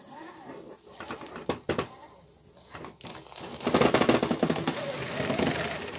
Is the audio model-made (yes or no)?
no